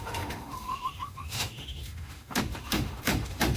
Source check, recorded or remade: remade